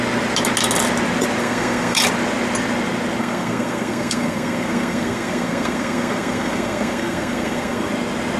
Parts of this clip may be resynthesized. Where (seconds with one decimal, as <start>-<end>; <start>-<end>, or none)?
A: 1.4-2.0; 3.2-7.9